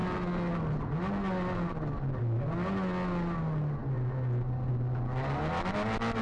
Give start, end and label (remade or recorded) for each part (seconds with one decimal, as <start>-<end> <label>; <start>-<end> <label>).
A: 0.0-6.2 recorded